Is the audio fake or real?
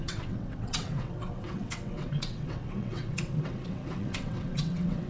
fake